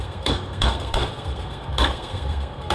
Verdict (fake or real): fake